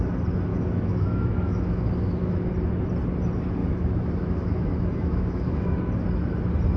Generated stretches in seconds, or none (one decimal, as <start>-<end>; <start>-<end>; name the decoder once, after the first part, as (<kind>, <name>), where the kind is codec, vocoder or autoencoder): 0.5-2.5 (autoencoder, DAC-VAE); 3.6-5.8